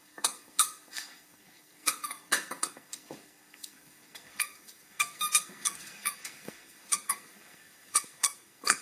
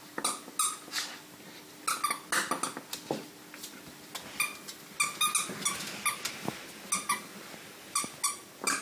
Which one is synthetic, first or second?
first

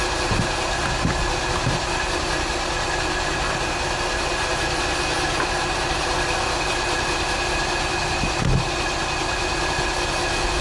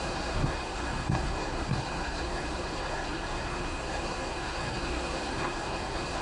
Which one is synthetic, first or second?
second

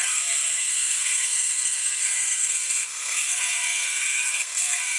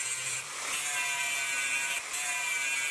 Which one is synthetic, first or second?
first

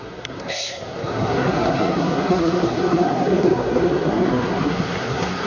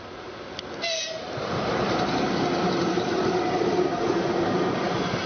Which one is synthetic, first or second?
first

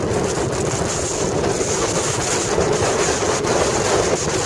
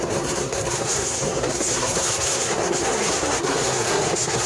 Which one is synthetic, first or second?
second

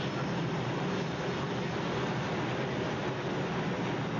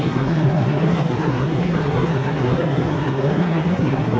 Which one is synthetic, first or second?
second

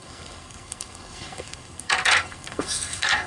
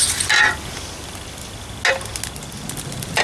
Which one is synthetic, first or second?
first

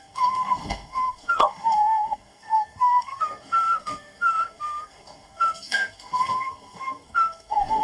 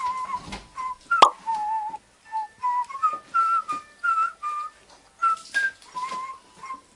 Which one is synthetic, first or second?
first